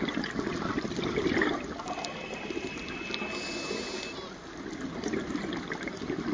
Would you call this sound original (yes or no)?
yes